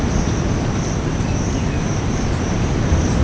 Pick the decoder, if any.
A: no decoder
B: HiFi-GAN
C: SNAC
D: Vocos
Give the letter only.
A